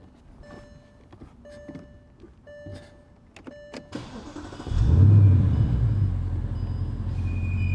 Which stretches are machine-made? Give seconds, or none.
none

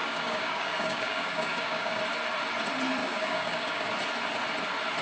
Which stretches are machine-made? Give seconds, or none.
0.0-2.0; 3.0-3.9

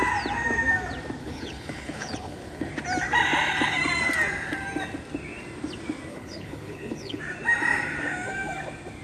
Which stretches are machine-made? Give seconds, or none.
1.2-2.7; 6.1-7.2

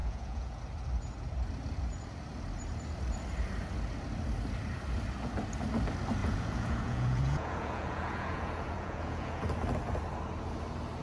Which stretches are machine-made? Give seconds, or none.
0.0-0.6; 6.2-9.4

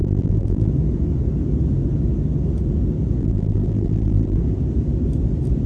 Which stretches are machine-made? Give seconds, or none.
0.0-0.7; 3.2-4.4